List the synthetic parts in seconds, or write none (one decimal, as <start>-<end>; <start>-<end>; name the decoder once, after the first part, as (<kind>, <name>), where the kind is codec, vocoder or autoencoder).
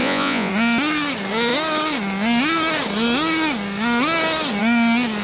0.0-0.5 (vocoder, Vocos)